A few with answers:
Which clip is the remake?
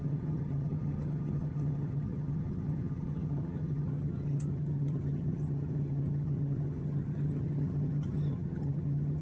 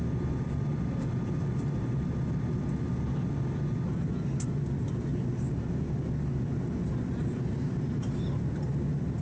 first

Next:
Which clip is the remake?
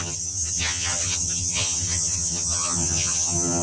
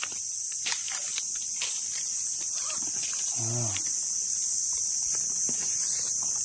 first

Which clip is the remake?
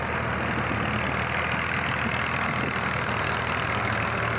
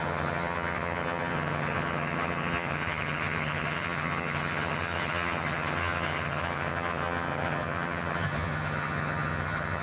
second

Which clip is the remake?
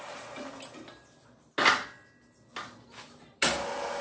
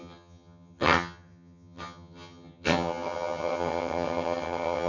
second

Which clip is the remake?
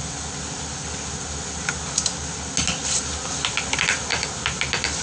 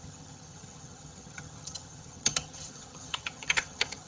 second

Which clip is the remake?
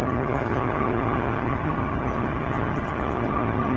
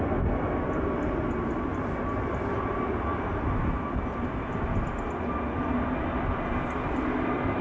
first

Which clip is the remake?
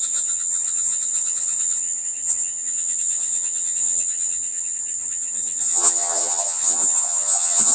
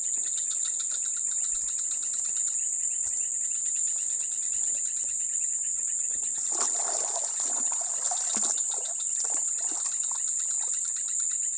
first